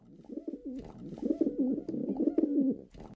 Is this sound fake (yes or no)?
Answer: no